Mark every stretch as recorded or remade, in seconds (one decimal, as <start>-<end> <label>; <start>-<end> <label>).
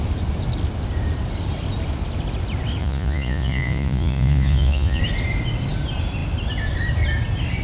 0.0-2.8 recorded; 2.8-5.0 remade; 5.0-7.6 recorded